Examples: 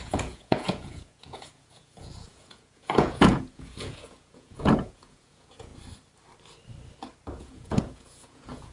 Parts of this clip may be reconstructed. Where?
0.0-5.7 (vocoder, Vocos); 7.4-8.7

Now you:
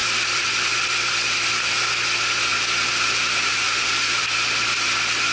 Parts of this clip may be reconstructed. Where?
0.0-0.7 (vocoder, BigVGAN v2); 2.5-4.2

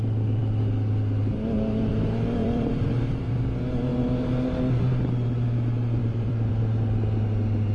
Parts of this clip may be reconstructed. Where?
2.4-3.3 (vocoder, BigVGAN v2); 6.0-6.5

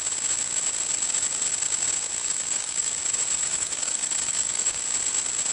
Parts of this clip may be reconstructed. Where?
2.2-2.9 (codec, DAC); 3.4-4.8

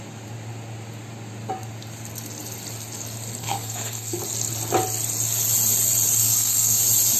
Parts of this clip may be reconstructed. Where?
3.4-4.2 (codec, SNAC); 6.2-6.8

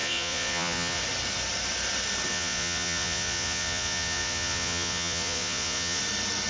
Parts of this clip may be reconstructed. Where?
0.0-1.0 (vocoder, Vocos); 2.3-6.0

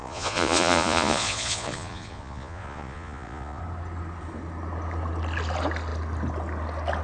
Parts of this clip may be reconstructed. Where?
0.0-3.6 (vocoder, Vocos)